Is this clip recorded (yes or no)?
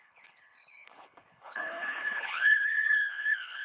no